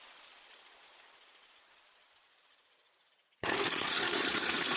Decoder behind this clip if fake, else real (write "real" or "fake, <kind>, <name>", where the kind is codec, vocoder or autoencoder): fake, vocoder, Vocos